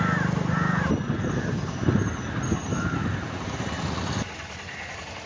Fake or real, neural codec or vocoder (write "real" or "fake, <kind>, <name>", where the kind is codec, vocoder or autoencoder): real